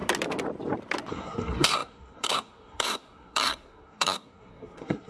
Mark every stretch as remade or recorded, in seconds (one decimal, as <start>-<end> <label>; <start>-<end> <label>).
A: 0.0-1.1 recorded; 1.1-5.1 remade